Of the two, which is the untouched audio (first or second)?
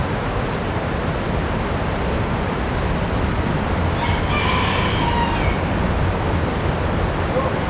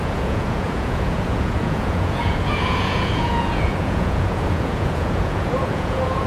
first